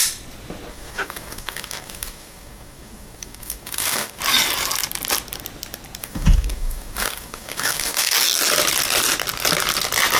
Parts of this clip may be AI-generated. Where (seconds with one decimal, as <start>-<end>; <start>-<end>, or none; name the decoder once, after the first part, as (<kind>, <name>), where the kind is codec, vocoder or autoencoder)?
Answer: 0.7-4.2 (codec, DAC); 6.0-8.1

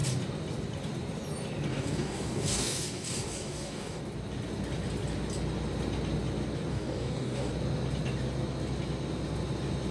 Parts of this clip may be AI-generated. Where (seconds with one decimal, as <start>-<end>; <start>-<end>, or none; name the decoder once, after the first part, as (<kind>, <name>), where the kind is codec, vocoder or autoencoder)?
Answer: 1.7-4.0 (codec, DAC); 6.7-7.5